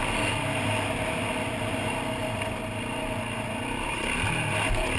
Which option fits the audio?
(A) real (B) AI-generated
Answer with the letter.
A